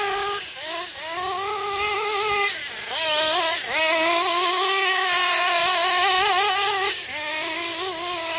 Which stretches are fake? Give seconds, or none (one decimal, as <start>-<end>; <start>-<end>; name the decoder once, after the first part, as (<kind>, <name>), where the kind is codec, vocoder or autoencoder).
0.0-2.6 (codec, DAC); 3.8-5.6; 6.5-8.4